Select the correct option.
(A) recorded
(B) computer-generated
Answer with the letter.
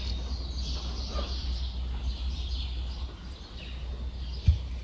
A